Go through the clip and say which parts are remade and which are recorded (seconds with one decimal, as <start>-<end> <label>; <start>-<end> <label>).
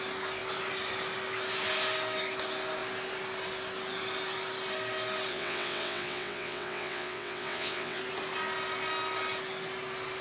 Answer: 0.0-5.3 recorded; 5.3-8.0 remade; 8.0-10.2 recorded